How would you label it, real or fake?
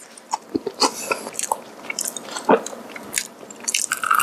real